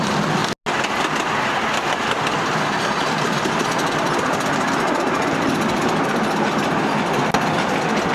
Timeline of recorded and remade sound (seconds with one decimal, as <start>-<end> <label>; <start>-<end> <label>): 0.0-8.1 recorded